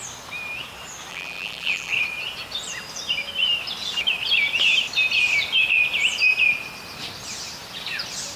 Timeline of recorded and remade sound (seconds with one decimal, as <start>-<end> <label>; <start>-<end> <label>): 0.0-1.1 recorded; 1.1-1.9 remade; 1.9-8.4 recorded